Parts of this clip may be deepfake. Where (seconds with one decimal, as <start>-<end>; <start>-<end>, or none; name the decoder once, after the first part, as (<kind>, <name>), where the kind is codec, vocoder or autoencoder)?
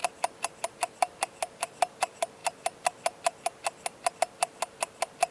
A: none